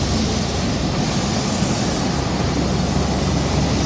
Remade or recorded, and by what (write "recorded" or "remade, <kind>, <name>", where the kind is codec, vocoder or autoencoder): recorded